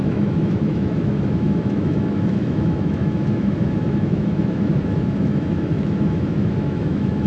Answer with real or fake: fake